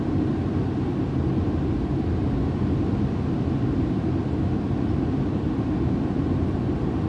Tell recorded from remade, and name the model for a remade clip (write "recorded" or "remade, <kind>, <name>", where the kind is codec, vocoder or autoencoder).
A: recorded